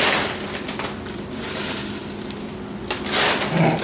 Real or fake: real